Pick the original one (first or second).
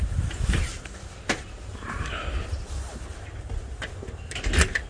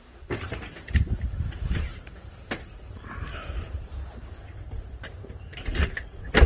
first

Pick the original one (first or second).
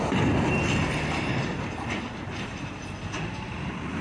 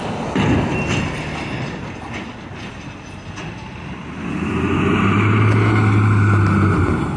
second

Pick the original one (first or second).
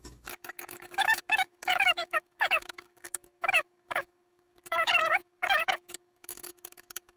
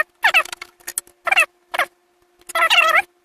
second